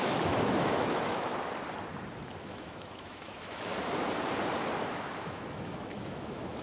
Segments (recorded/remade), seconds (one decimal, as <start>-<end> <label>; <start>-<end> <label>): 0.0-1.3 remade; 1.3-2.4 recorded; 2.4-3.7 remade; 3.7-4.9 recorded; 4.9-6.6 remade